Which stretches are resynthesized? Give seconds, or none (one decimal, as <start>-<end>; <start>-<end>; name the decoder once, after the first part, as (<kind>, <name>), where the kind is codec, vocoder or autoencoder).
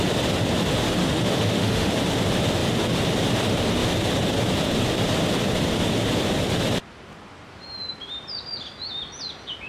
1.0-1.9 (autoencoder, DAC-VAE)